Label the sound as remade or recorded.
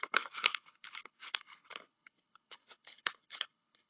remade